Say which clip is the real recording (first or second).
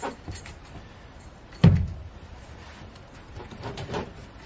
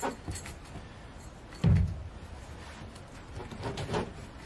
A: second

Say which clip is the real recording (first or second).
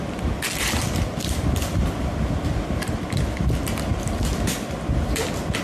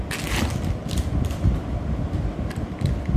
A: second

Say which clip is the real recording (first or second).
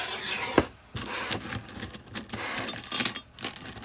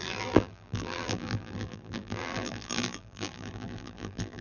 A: first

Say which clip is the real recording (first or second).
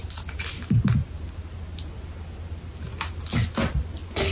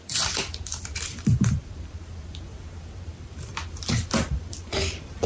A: first